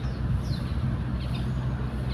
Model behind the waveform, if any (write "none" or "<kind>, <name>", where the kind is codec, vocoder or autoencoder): none